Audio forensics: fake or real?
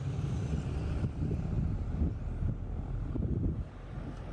fake